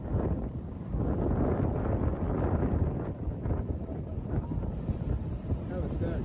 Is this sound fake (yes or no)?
no